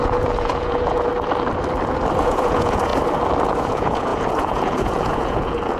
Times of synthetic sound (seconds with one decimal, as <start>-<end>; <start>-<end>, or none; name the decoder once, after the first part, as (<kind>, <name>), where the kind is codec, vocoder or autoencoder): 0.0-1.1 (vocoder, Vocos); 2.2-2.9; 3.6-5.8